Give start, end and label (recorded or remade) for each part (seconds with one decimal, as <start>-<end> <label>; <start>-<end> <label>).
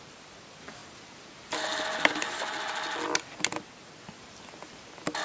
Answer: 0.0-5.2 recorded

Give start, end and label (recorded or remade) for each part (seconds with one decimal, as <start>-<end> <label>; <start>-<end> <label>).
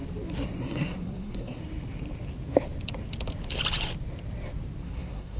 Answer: 0.0-0.6 recorded; 0.6-1.6 remade; 1.6-4.8 recorded; 4.8-5.4 remade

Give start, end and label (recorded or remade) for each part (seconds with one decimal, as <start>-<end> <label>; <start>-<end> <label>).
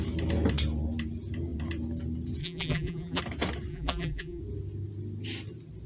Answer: 0.0-2.4 recorded; 2.4-3.2 remade; 3.2-3.7 recorded; 3.7-4.4 remade; 4.4-5.9 recorded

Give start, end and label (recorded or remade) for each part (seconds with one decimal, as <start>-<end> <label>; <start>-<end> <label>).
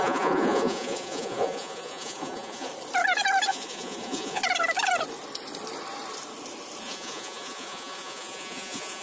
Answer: 0.0-2.7 remade; 2.7-3.5 recorded; 3.5-4.4 remade; 4.4-6.8 recorded; 6.8-9.0 remade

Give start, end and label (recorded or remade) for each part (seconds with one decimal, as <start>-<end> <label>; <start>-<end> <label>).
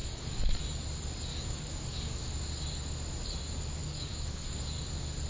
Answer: 0.0-0.6 remade; 0.6-1.3 recorded; 1.3-2.3 remade; 2.3-3.8 recorded; 3.8-4.6 remade; 4.6-5.3 recorded